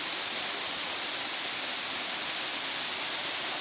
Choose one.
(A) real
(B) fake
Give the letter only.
A